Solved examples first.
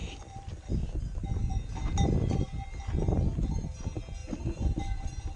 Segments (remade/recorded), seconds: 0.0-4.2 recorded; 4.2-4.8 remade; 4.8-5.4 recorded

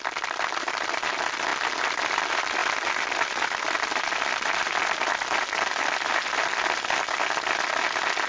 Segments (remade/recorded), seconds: 0.0-8.3 recorded

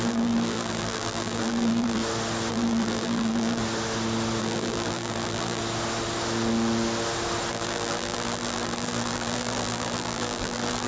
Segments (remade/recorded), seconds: 0.0-2.0 remade; 2.0-2.5 recorded; 2.5-3.6 remade; 3.6-4.4 recorded; 4.4-5.6 remade; 5.6-7.5 recorded; 7.5-10.9 remade

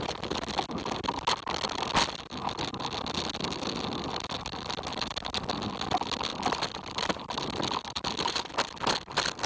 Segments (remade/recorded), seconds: 0.0-6.3 recorded; 6.3-8.5 remade; 8.5-9.5 recorded